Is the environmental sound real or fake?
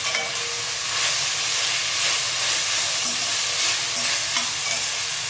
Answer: real